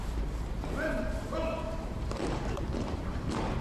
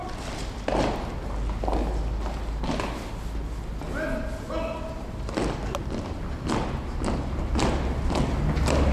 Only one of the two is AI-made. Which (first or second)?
first